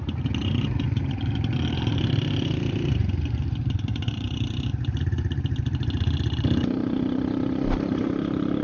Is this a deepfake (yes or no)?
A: yes